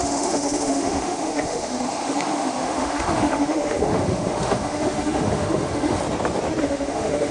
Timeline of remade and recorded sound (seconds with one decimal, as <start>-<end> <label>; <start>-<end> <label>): 0.0-6.0 remade; 6.0-6.6 recorded; 6.6-7.3 remade